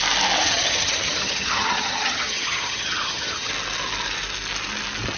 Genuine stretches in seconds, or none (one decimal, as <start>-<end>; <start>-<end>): 0.0-0.4; 3.5-5.2